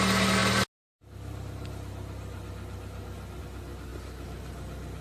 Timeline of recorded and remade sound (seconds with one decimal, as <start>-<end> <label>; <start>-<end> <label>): 0.0-5.0 recorded